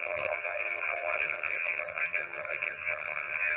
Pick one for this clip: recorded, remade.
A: remade